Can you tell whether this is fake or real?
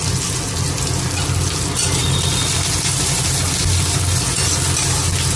real